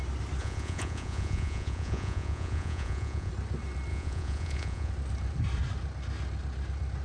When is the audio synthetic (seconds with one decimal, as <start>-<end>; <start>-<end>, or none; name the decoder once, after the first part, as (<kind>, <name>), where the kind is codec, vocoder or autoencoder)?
0.4-3.3 (vocoder, Vocos); 3.9-4.9